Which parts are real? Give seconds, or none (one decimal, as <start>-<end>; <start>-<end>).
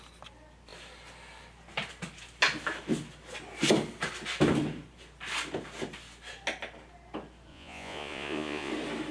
0.0-7.5; 8.7-9.1